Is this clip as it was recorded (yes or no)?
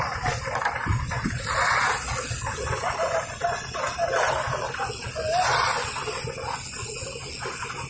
yes